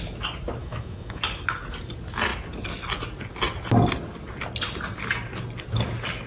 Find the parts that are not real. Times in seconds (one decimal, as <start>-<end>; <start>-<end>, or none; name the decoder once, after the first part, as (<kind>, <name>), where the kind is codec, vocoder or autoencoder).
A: 0.6-1.2 (autoencoder, DAC-VAE)